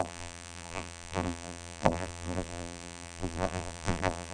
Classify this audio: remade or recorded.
remade